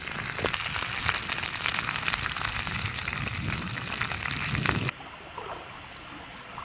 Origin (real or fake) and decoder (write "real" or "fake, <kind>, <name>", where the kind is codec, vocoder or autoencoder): real